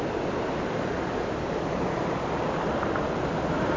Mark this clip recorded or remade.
recorded